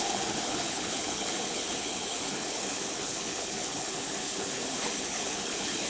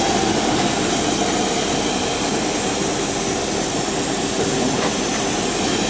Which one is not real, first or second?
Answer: first